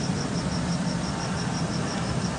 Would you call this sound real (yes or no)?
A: yes